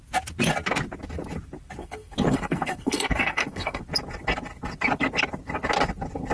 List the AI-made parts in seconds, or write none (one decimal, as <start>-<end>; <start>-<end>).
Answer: 1.8-3.8